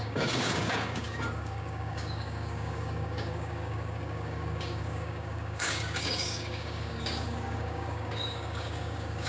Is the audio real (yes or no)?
no